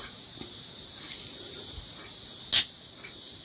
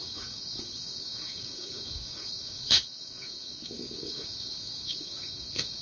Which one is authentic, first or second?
first